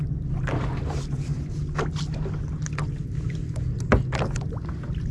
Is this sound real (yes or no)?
yes